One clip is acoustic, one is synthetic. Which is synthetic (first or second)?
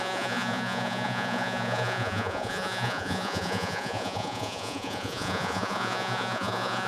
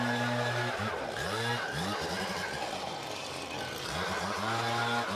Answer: first